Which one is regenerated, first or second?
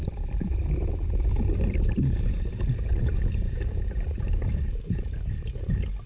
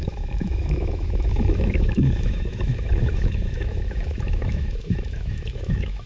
second